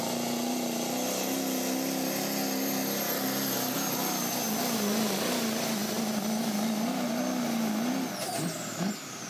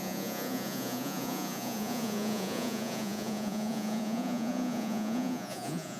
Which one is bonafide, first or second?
first